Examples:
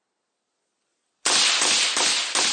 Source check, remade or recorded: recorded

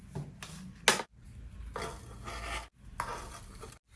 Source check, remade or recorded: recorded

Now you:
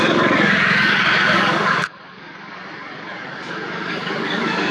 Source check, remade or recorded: remade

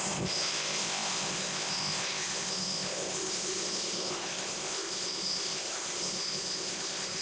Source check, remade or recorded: remade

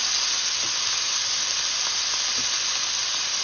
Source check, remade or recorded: recorded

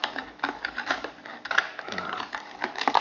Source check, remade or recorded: remade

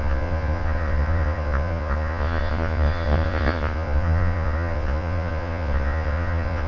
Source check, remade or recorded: remade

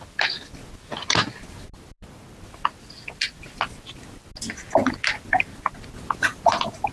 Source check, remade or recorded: recorded